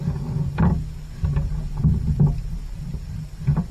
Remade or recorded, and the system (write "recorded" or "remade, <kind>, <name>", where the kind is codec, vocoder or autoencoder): recorded